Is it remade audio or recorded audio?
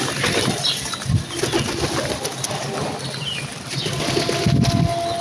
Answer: recorded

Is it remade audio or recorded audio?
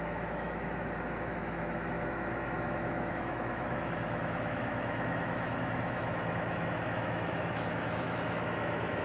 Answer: remade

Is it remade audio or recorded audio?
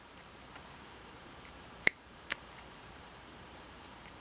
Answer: remade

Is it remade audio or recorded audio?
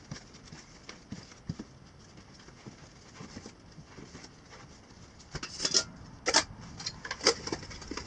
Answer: recorded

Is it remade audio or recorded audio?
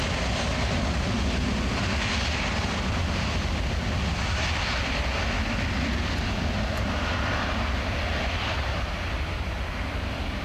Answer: recorded